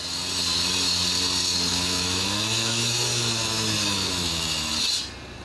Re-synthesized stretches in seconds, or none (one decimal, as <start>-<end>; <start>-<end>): 1.7-4.7